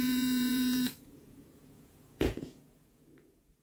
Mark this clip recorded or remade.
remade